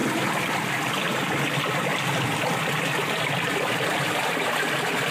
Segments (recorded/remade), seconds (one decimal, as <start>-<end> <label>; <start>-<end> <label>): 0.0-1.4 remade; 1.4-1.9 recorded; 1.9-5.1 remade